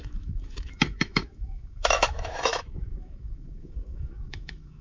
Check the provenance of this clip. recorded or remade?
remade